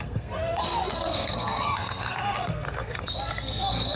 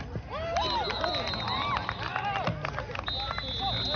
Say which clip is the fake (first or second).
first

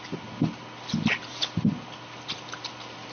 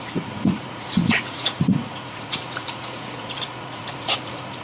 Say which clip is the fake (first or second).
second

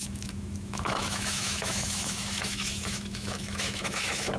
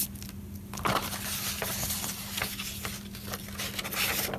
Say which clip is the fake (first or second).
first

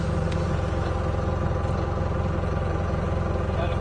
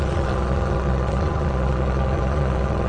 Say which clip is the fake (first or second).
second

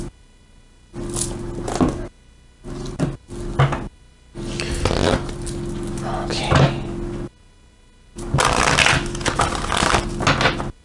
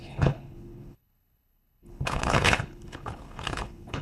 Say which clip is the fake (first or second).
second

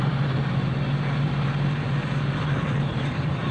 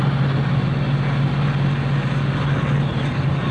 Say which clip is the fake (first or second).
first